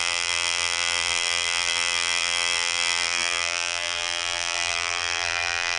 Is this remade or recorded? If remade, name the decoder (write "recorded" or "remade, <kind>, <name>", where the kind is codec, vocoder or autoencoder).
remade, vocoder, BigVGAN v2